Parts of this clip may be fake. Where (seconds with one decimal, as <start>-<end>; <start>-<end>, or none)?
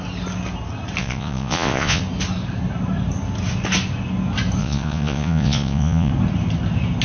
1.0-2.0; 4.6-6.1